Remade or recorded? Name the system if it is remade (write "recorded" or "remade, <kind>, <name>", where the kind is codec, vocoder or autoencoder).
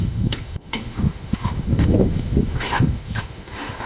remade, autoencoder, DAC-VAE